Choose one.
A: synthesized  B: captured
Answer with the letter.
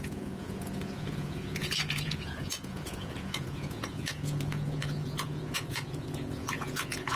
A